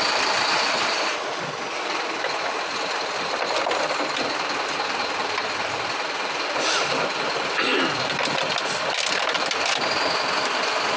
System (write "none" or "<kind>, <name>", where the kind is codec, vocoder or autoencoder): vocoder, BigVGAN v2